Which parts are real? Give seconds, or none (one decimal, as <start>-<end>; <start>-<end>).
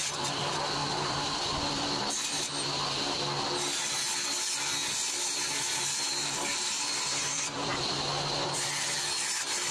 0.0-0.8; 2.5-6.1; 8.7-9.7